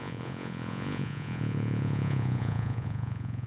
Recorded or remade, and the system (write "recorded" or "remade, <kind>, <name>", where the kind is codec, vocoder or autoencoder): remade, vocoder, Vocos